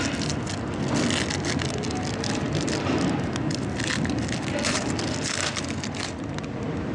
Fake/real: real